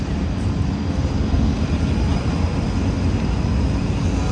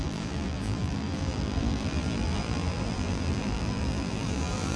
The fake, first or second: second